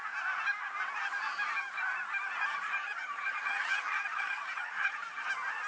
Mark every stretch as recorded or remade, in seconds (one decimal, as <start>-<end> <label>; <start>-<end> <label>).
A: 0.0-2.5 recorded; 2.5-5.3 remade; 5.3-5.7 recorded